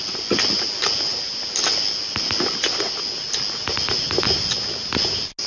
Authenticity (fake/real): real